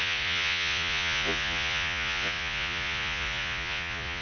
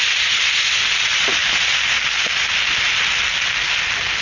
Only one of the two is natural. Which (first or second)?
second